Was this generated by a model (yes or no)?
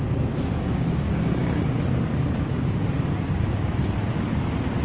no